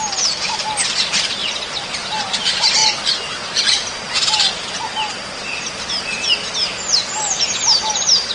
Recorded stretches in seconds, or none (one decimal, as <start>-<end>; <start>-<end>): 0.0-8.3